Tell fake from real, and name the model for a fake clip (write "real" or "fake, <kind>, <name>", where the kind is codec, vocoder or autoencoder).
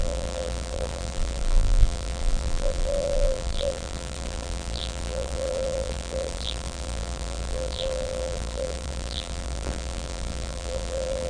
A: fake, vocoder, BigVGAN v2